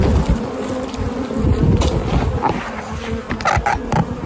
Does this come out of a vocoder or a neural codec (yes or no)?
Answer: no